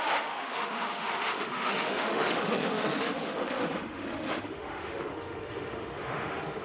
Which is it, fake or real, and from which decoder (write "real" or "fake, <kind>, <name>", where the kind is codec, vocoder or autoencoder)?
fake, autoencoder, DAC-VAE